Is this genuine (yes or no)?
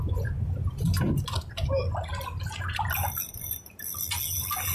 yes